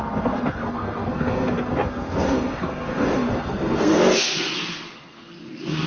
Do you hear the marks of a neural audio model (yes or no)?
yes